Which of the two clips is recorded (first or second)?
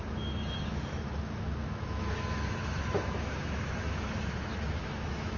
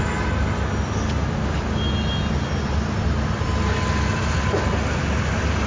second